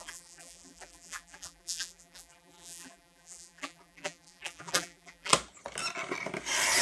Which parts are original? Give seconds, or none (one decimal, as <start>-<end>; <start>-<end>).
5.3-6.8